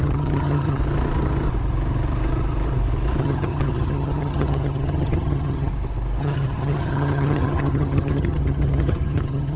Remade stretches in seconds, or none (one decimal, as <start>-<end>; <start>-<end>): 0.0-0.8; 3.2-5.7; 6.2-9.6